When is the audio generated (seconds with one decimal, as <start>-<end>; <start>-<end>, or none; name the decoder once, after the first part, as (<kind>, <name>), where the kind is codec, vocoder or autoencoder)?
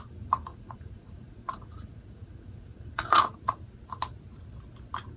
0.5-3.6 (vocoder, Vocos)